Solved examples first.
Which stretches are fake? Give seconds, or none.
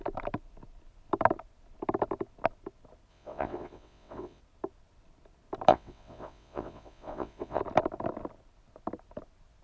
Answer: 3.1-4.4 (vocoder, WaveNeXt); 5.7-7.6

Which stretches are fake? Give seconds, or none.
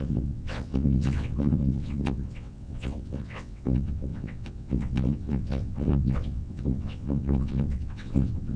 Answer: 0.0-8.6 (vocoder, WaveNeXt)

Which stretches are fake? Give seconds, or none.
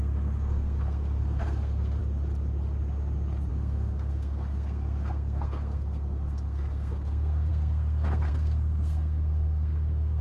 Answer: 0.0-2.0 (codec, SNAC); 3.5-10.2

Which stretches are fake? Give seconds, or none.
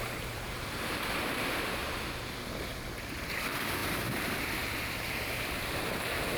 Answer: 0.0-1.8 (vocoder, BigVGAN v2); 2.9-6.4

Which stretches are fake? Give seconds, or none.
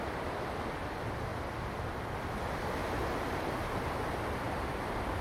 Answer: none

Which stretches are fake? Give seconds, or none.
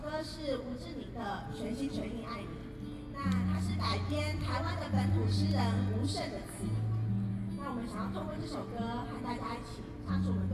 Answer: none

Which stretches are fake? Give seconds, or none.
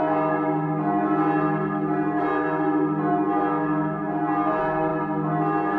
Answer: none